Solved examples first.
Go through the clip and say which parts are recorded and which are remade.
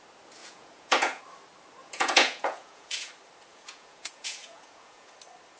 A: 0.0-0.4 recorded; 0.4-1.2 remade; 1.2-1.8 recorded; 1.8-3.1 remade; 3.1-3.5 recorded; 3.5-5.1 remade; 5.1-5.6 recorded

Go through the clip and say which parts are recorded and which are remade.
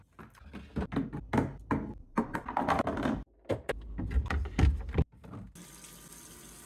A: 0.0-6.7 recorded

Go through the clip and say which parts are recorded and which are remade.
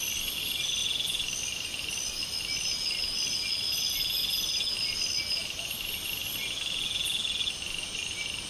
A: 0.0-8.5 recorded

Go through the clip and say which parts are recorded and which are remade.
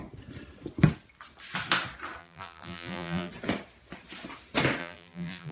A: 0.0-2.2 recorded; 2.2-3.3 remade; 3.3-4.8 recorded; 4.8-5.5 remade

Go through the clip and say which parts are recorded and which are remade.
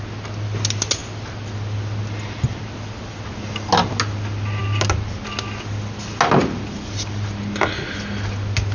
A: 0.0-8.7 recorded